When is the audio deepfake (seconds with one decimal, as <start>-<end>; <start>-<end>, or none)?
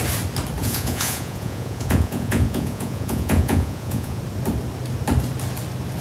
0.6-4.2